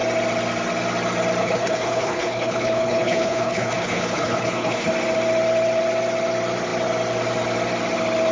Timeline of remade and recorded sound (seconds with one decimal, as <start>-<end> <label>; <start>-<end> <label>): 0.0-1.4 recorded; 1.4-4.9 remade; 4.9-8.3 recorded